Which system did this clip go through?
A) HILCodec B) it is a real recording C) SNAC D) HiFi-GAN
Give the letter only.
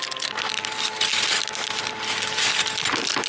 B